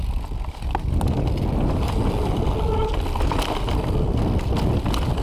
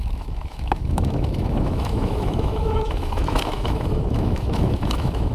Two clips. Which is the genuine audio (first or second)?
first